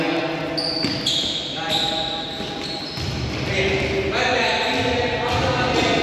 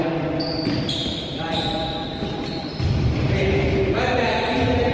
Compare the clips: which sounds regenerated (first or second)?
second